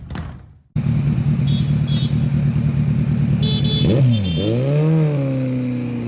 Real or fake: real